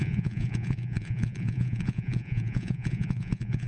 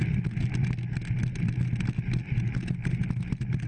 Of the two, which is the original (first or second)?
second